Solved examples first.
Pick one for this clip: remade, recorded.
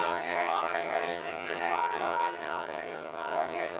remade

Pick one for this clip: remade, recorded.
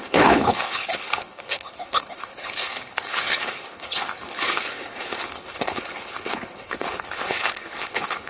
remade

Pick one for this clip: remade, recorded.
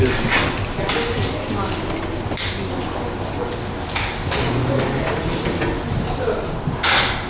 recorded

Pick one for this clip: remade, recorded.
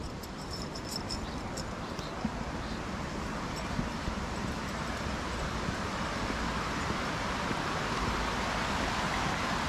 recorded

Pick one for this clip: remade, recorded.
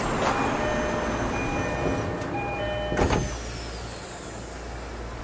recorded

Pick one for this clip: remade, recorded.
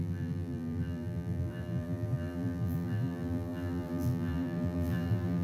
remade